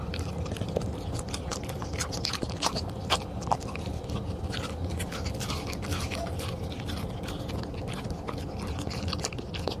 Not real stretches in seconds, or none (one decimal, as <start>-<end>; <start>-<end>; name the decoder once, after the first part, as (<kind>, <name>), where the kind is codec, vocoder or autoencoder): none